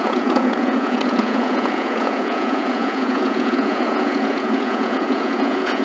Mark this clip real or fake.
fake